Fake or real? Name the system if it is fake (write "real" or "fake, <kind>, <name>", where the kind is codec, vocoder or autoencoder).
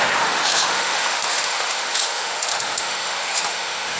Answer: fake, autoencoder, DAC-VAE